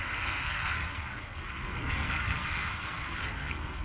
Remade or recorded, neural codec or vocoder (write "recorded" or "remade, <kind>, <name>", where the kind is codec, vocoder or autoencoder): remade, codec, SNAC